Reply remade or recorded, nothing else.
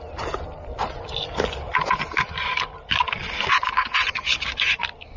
recorded